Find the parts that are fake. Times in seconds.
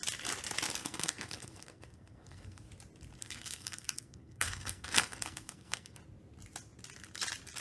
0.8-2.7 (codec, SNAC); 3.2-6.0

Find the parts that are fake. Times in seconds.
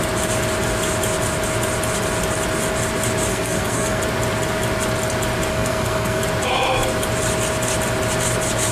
3.3-4.0 (codec, SNAC); 5.5-6.2